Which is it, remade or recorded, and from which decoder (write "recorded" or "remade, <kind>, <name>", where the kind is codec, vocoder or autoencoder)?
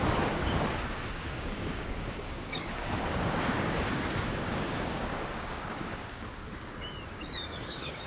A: remade, codec, DAC